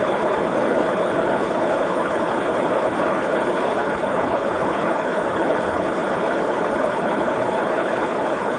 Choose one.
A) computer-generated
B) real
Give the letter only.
A